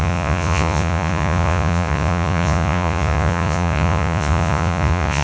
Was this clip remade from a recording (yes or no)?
yes